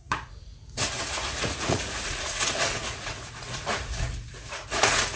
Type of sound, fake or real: fake